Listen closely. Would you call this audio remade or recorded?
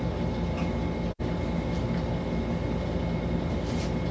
recorded